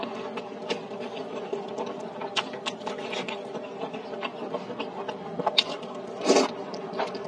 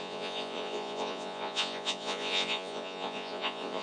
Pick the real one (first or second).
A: first